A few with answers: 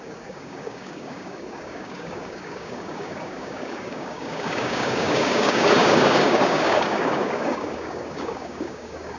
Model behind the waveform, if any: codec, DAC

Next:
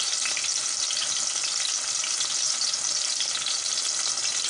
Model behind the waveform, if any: none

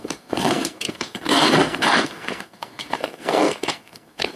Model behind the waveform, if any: codec, SNAC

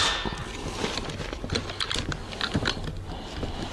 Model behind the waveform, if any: none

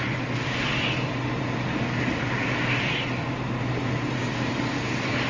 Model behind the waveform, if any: none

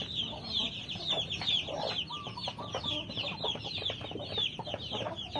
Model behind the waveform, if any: none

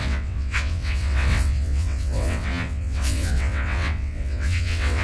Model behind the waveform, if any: vocoder, WaveNeXt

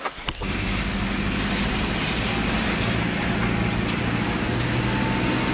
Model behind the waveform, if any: none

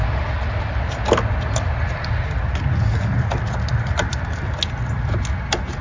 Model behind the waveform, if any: none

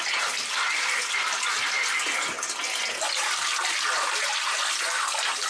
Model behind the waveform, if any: none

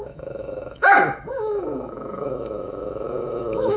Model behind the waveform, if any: autoencoder, DAC-VAE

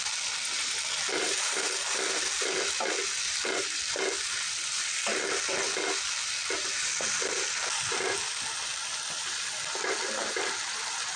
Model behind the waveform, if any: none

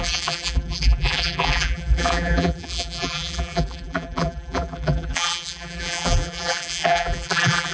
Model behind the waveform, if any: vocoder, BigVGAN v2